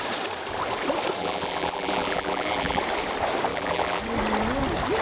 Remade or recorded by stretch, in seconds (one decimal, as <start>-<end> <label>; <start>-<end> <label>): 0.0-1.2 recorded; 1.2-2.8 remade; 2.8-3.5 recorded; 3.5-4.0 remade; 4.0-5.0 recorded